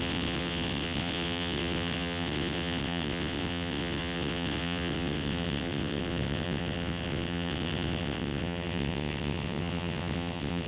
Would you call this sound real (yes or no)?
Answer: no